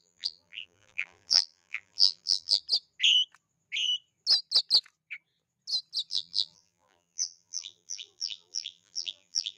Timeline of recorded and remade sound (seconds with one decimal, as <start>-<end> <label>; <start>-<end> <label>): 0.0-2.6 remade; 2.6-6.1 recorded; 6.1-9.6 remade